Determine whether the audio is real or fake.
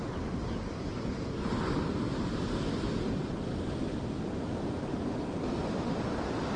real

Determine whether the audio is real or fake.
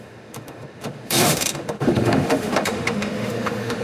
fake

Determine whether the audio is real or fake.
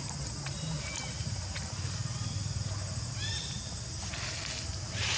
real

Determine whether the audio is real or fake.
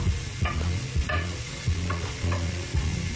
fake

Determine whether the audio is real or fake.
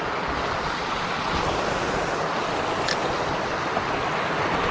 real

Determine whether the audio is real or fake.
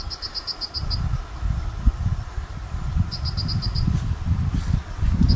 real